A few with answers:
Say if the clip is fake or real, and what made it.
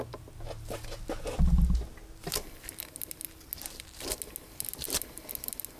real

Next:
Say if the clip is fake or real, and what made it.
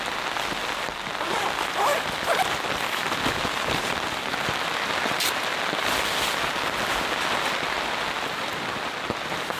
real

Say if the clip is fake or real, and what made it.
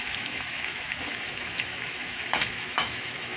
fake, autoencoder, DAC-VAE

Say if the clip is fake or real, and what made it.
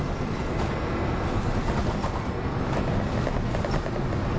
real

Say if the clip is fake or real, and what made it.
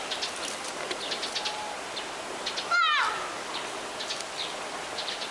real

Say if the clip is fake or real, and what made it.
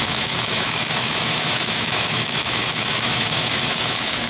fake, autoencoder, DAC-VAE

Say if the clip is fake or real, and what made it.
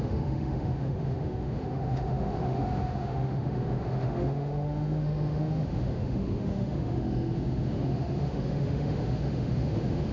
fake, autoencoder, DAC-VAE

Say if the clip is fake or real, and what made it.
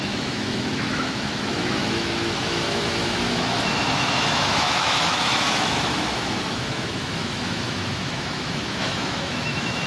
fake, autoencoder, DAC-VAE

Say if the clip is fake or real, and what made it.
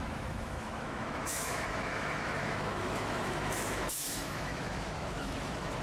fake, autoencoder, DAC-VAE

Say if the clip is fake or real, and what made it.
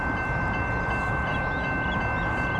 real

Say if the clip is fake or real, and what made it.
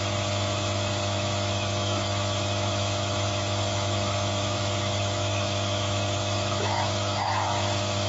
fake, autoencoder, DAC-VAE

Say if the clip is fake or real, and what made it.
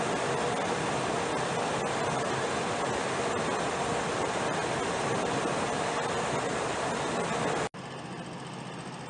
real